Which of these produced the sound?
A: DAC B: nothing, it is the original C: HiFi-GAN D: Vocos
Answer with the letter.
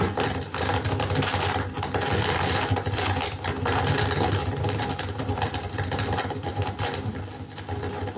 B